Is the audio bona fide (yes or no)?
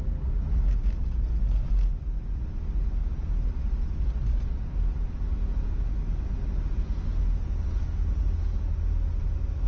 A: yes